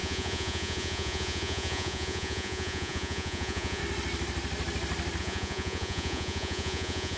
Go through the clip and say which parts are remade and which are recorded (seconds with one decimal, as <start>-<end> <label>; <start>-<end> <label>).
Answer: 0.0-3.8 remade; 3.8-5.2 recorded; 5.2-7.2 remade